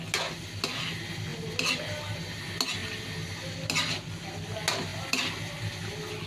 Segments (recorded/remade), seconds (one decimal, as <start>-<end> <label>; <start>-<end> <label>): 0.0-6.3 recorded

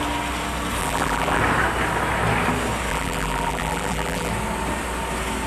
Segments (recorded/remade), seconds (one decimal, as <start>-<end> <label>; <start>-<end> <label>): 0.0-0.8 recorded; 0.8-1.4 remade; 1.4-2.9 recorded; 2.9-4.3 remade; 4.3-5.5 recorded

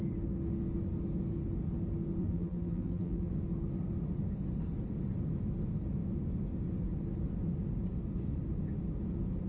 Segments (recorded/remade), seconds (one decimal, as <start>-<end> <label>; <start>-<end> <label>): 0.0-2.2 recorded; 2.2-3.3 remade; 3.3-9.5 recorded

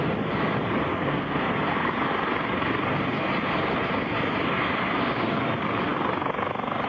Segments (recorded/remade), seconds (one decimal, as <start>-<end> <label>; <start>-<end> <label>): 0.0-0.9 recorded; 0.9-1.4 remade; 1.4-6.9 recorded

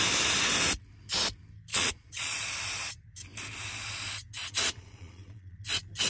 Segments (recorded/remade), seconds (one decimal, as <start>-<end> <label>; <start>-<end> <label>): 0.0-1.7 recorded; 1.7-2.5 remade; 2.5-4.4 recorded; 4.4-5.6 remade; 5.6-6.1 recorded

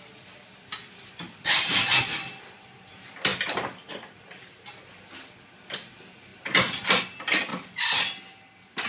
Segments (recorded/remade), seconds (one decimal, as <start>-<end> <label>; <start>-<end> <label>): 0.0-8.9 recorded